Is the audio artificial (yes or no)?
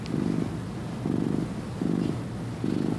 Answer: no